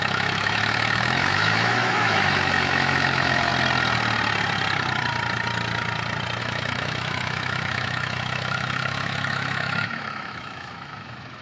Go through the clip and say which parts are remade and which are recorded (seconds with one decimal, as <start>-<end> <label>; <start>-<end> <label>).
0.0-3.5 remade; 3.5-6.4 recorded; 6.4-11.4 remade